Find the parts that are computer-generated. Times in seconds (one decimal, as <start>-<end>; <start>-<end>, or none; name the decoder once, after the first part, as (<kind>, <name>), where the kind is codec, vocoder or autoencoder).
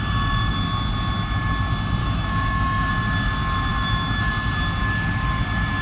2.0-2.9 (autoencoder, DAC-VAE); 3.7-4.3